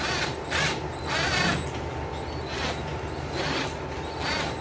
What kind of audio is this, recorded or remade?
recorded